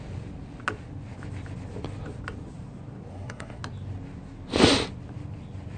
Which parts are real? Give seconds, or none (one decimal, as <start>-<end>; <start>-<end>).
0.0-3.1; 3.6-5.8